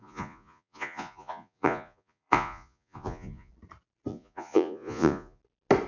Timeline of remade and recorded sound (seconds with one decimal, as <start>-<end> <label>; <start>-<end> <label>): 0.0-3.5 remade; 3.5-4.1 recorded; 4.1-5.4 remade; 5.4-5.9 recorded